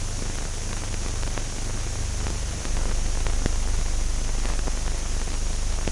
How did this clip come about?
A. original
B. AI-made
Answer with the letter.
A